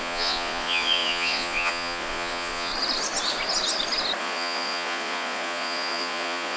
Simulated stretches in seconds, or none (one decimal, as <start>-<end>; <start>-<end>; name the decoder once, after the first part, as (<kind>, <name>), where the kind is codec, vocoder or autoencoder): 0.0-2.7 (vocoder, Vocos); 4.2-6.6